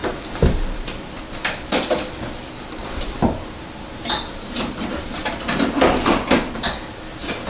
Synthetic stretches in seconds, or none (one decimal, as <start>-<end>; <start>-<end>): 0.0-1.2; 2.8-5.3

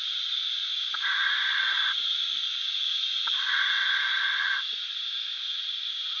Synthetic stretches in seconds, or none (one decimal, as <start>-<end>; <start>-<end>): none

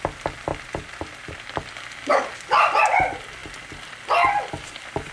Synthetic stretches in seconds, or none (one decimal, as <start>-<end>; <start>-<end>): 0.5-1.7; 2.1-3.0; 3.4-5.1